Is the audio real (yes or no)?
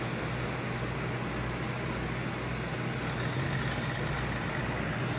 yes